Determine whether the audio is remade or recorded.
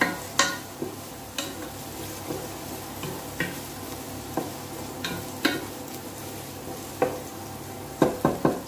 recorded